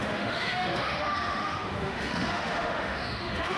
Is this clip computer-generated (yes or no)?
yes